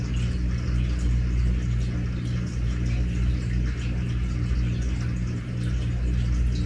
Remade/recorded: recorded